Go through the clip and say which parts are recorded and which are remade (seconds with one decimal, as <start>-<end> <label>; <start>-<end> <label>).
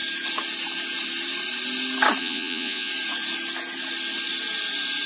0.0-2.2 recorded; 2.2-2.9 remade; 2.9-5.1 recorded